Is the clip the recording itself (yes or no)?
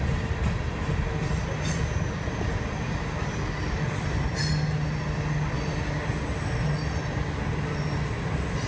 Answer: yes